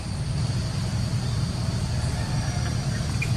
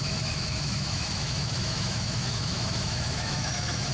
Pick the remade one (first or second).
second